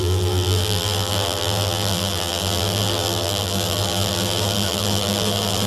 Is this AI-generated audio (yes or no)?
yes